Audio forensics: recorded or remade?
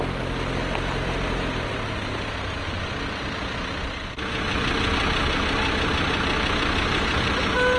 recorded